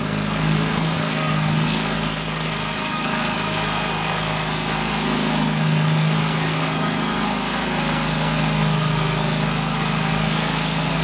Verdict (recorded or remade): remade